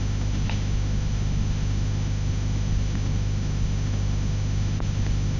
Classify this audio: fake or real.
fake